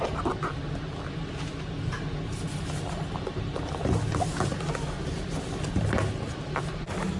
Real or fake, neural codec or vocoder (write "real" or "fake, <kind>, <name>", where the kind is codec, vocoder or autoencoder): real